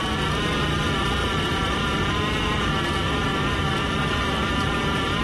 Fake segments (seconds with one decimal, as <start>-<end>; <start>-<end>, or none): 1.2-2.7; 3.3-5.2

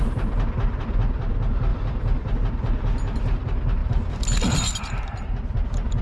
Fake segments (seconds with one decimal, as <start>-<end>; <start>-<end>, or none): 1.7-2.4; 3.8-6.0

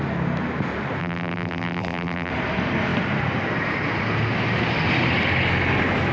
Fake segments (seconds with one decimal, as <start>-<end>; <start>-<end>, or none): 1.0-2.3

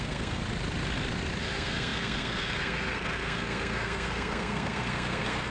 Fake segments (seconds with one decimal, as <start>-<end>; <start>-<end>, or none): 0.0-0.4; 1.4-5.5

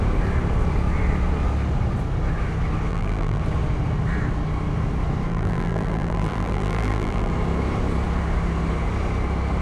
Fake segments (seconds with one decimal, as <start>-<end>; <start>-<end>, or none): 2.9-3.4; 5.3-7.3

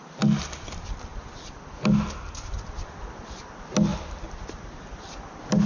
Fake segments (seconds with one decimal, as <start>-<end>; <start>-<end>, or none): none

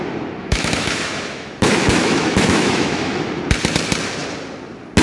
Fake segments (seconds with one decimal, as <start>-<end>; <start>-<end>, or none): 0.4-3.4